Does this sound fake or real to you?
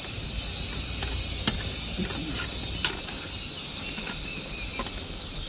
real